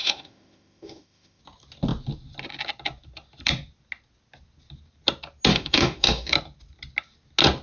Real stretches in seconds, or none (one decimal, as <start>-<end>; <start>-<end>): 1.4-5.5; 6.3-7.6

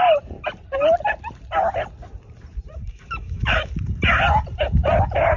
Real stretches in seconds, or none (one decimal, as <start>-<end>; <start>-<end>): 0.0-2.9; 3.7-5.4

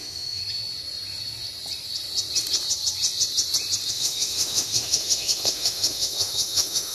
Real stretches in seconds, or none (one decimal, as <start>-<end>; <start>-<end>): 0.4-3.9

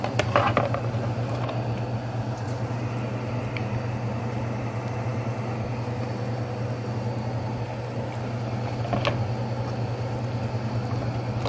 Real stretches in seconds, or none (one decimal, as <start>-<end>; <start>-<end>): 0.0-11.5

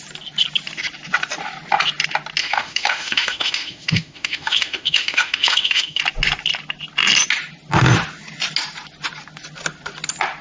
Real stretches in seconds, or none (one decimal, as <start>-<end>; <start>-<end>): 0.0-2.4; 6.0-10.4

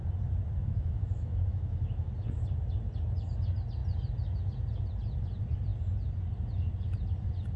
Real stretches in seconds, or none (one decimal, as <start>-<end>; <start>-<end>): 0.0-0.6; 2.1-7.6

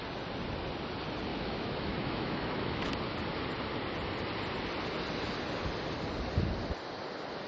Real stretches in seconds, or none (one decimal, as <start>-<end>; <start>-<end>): 0.0-1.3; 2.9-7.5

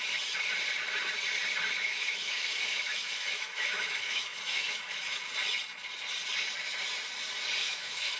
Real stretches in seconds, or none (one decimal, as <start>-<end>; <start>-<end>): 0.0-1.9; 5.3-7.6